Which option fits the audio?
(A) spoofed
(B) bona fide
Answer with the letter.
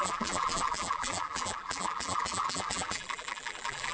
A